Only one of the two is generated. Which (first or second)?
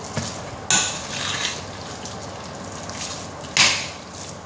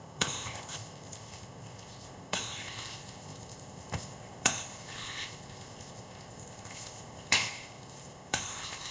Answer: second